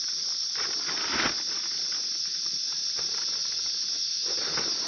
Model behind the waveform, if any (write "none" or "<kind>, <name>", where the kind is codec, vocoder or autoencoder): none